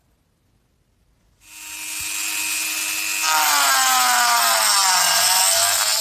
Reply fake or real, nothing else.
real